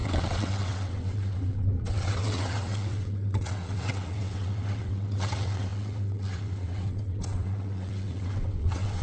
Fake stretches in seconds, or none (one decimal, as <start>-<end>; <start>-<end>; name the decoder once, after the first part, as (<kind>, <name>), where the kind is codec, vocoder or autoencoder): 0.0-9.0 (vocoder, WaveNeXt)